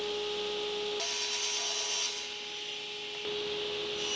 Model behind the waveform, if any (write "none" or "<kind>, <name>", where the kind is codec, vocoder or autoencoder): none